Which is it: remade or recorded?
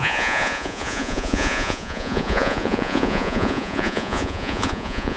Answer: remade